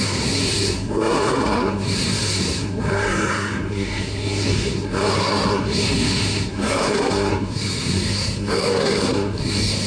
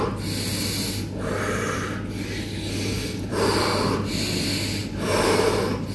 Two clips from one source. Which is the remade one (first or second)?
first